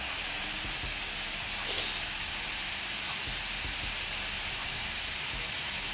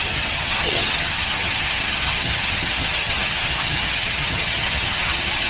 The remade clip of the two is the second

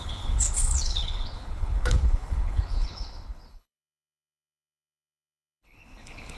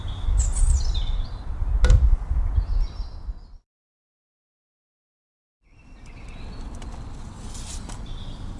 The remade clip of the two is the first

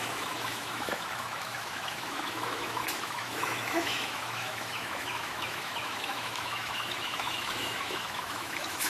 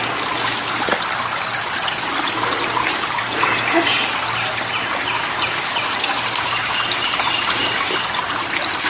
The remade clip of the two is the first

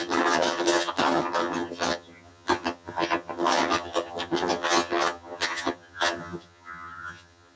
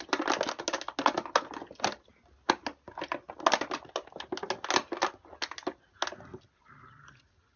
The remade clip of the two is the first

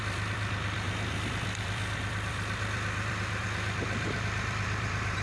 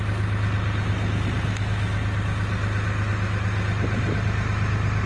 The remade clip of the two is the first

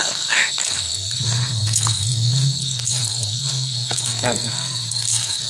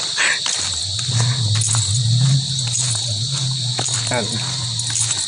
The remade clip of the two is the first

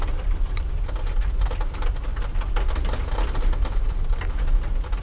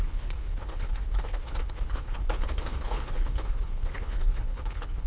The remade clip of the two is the second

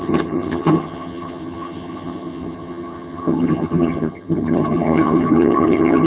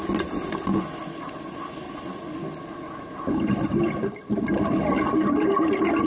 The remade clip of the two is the first